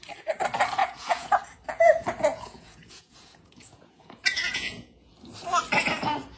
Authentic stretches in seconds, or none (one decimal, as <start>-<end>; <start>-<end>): 0.0-0.8; 1.4-2.3; 5.1-6.4